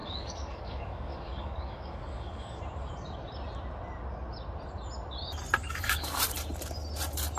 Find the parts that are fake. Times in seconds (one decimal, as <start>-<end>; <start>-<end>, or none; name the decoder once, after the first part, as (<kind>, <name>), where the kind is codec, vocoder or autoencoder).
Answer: 0.0-2.6 (codec, DAC); 5.6-6.2